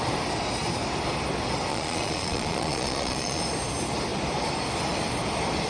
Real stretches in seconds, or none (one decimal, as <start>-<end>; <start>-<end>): 0.0-1.7; 3.4-5.7